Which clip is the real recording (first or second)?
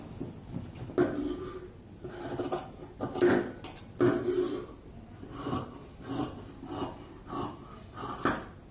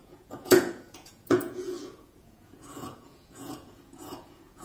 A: first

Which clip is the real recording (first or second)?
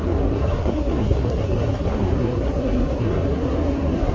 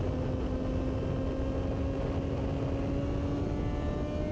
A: second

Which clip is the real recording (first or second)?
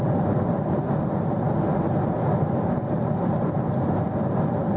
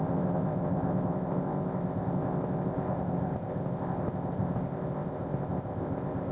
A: first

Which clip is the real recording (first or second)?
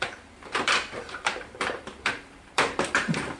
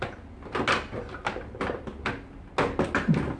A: second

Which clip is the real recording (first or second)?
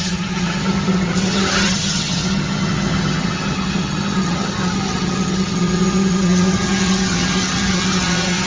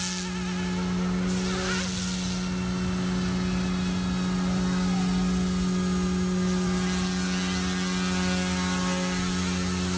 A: second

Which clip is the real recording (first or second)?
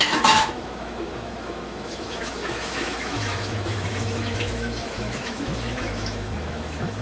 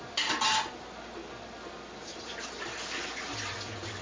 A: second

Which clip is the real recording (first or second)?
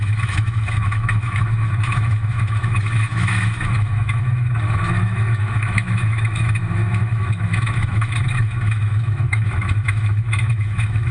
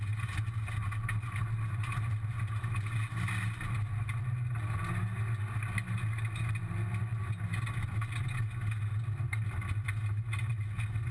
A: second